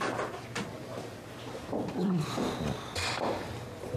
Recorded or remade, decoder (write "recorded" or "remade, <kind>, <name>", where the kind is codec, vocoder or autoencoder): recorded